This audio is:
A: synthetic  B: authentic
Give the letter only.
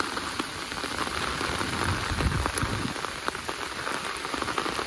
B